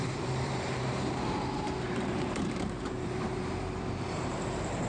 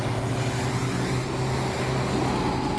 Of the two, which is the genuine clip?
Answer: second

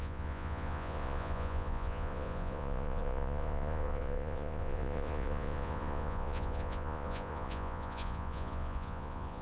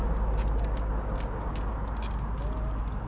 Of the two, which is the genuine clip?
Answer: second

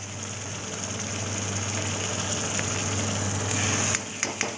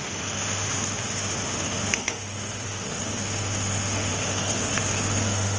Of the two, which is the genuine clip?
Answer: first